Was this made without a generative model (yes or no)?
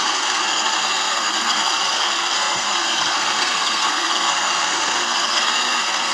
no